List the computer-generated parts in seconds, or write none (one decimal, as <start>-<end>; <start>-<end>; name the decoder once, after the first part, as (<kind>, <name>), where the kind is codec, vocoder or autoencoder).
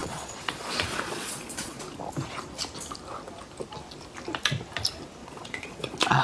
0.0-1.8 (vocoder, Vocos); 5.2-6.2